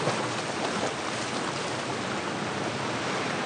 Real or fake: real